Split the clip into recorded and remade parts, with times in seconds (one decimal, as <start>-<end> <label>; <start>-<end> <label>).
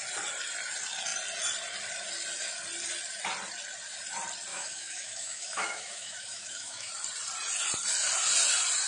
0.0-4.5 recorded; 4.5-6.9 remade; 6.9-8.9 recorded